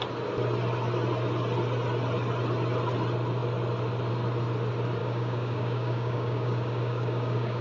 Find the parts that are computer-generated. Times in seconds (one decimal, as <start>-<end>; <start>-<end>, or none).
5.0-7.6